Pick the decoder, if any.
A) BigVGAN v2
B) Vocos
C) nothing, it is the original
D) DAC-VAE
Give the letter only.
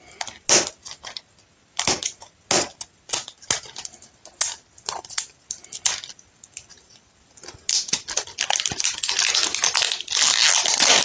C